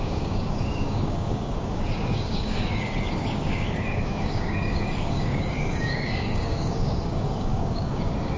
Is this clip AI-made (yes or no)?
yes